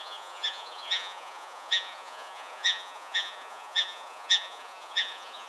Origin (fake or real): fake